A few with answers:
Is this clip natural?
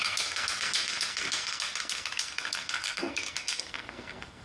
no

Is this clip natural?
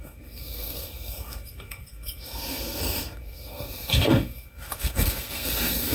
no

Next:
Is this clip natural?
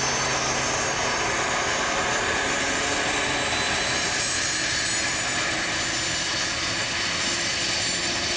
yes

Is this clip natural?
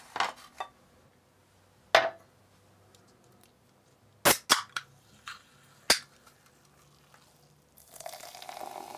yes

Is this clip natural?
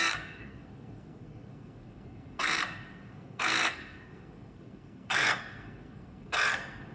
no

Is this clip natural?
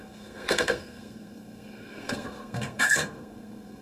no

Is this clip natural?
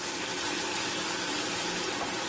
yes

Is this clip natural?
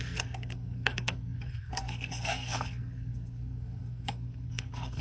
no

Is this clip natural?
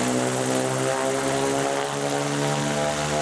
yes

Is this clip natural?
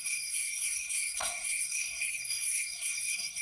no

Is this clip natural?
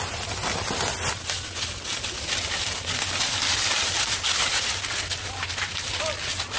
yes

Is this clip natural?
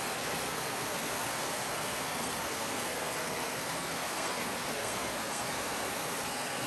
no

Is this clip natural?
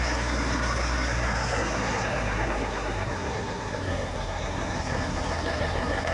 no